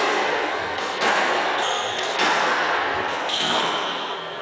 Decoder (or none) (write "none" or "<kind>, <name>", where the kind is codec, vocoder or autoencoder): codec, SNAC